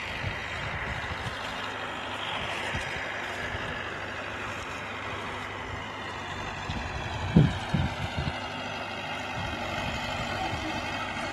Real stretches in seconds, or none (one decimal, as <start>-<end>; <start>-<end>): 0.0-11.3